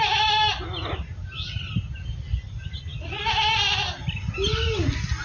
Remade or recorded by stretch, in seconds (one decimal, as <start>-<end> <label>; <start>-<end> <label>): 0.0-5.2 recorded